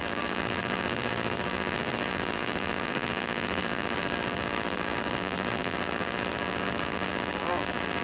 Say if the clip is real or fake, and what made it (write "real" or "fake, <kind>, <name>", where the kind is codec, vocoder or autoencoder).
fake, vocoder, BigVGAN v2